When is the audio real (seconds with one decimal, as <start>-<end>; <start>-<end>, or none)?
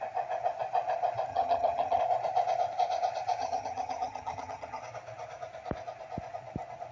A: 0.0-1.3; 2.0-3.4; 4.8-6.9